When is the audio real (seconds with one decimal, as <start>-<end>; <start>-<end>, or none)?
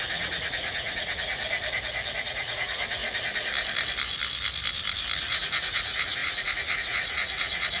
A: 1.4-2.1; 3.0-5.2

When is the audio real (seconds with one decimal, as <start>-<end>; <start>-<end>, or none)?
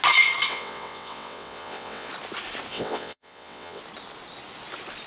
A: 0.0-0.5; 2.1-2.7; 3.8-5.1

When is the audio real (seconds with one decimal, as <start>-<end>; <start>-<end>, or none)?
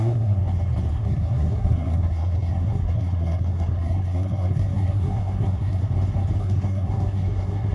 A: 0.4-0.9; 5.8-6.4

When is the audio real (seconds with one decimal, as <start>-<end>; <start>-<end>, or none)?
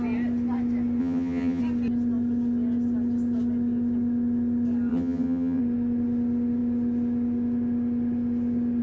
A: 0.0-1.0; 1.6-4.9; 5.6-8.8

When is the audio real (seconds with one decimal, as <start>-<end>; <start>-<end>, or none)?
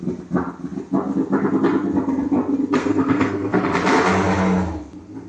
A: 0.0-2.8; 3.6-5.3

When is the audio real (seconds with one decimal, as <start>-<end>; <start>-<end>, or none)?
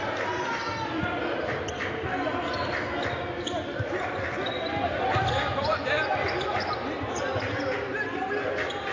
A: 0.0-8.9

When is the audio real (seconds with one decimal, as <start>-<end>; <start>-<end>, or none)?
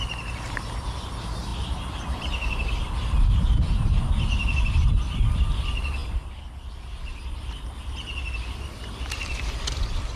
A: 0.0-10.2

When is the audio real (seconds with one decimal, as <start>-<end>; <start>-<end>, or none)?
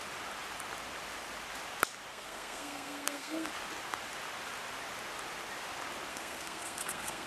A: 0.0-2.1; 3.5-6.1